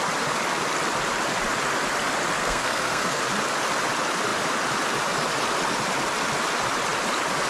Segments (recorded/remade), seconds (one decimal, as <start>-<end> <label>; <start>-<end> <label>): 0.0-2.4 recorded; 2.4-3.2 remade; 3.2-7.5 recorded